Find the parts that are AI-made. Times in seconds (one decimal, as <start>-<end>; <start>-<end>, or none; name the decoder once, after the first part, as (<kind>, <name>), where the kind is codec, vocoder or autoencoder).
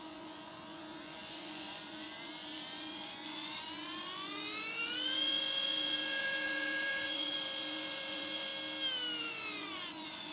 0.0-8.5 (vocoder, Vocos); 9.2-10.3